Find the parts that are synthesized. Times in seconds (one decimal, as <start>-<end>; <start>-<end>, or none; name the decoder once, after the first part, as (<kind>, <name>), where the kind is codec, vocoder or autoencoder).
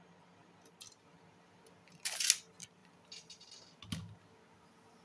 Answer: 2.8-3.5 (vocoder, BigVGAN v2)